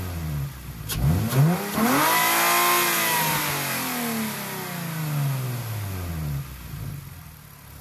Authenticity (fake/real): real